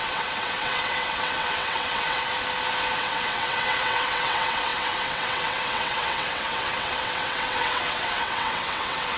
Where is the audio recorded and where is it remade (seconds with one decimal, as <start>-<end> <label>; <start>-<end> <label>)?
0.0-2.3 remade; 2.3-3.0 recorded; 3.0-9.2 remade